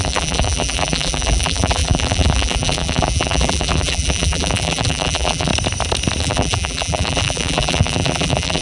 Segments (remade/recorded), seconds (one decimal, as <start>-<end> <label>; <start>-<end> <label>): 0.0-5.5 remade; 5.5-6.2 recorded; 6.2-8.6 remade